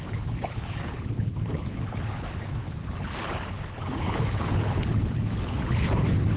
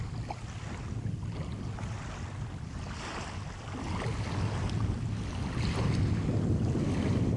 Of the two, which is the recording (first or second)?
second